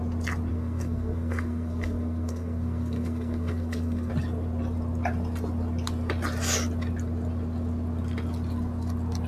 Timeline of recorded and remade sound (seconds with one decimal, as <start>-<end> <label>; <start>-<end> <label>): 0.0-0.5 recorded; 0.5-4.1 remade; 4.1-9.3 recorded